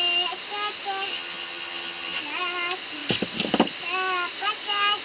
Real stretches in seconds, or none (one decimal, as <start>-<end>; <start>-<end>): 0.0-1.1; 2.2-5.0